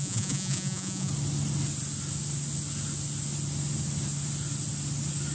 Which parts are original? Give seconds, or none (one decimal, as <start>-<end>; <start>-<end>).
1.1-5.3